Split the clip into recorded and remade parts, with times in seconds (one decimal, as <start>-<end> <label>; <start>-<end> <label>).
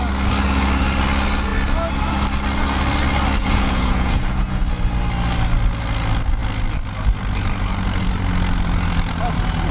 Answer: 0.0-3.4 recorded; 3.4-4.6 remade; 4.6-9.7 recorded